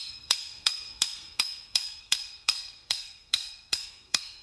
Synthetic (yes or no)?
yes